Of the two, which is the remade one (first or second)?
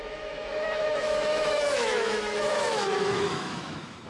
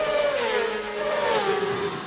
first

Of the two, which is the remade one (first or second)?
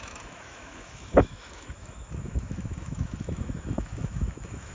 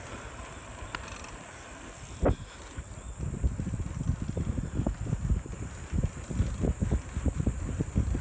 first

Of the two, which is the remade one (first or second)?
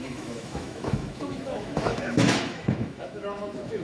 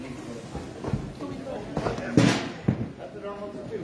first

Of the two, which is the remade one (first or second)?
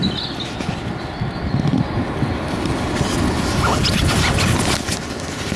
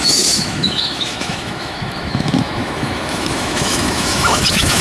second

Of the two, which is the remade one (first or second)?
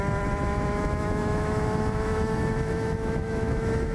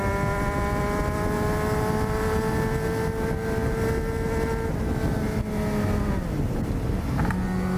first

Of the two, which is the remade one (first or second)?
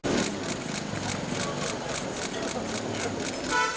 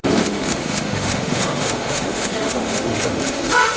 second